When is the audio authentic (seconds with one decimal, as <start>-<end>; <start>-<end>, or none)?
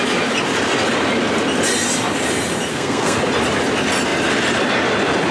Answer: 0.0-2.7; 3.2-5.3